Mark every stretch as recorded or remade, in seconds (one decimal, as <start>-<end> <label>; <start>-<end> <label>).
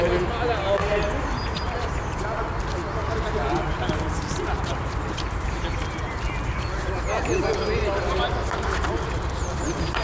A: 0.0-3.0 remade; 3.0-7.2 recorded; 7.2-10.0 remade